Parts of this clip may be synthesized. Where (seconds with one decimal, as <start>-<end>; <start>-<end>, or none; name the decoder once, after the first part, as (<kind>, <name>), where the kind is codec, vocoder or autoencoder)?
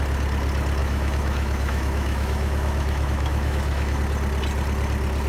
0.8-4.0 (autoencoder, DAC-VAE)